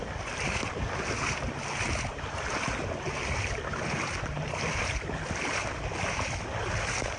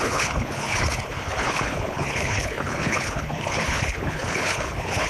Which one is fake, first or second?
second